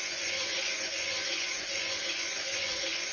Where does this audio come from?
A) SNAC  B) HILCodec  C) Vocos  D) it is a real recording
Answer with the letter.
C